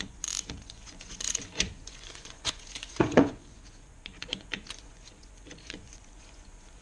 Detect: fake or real fake